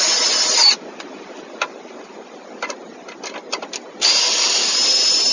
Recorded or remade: recorded